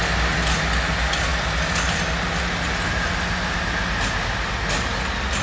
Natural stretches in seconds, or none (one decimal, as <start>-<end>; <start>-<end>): 0.0-5.4